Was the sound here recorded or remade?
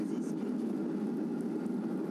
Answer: recorded